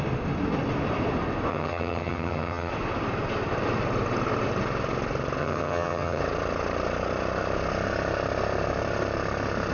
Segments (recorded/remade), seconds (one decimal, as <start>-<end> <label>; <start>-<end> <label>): 0.0-1.5 recorded; 1.5-2.7 remade; 2.7-5.4 recorded; 5.4-6.2 remade; 6.2-9.7 recorded

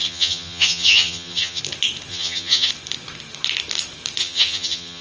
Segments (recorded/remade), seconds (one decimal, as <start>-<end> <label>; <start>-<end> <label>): 0.0-1.6 remade; 1.6-2.1 recorded; 2.1-2.7 remade; 2.7-4.2 recorded; 4.2-5.0 remade